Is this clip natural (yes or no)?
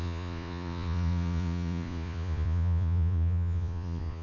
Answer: no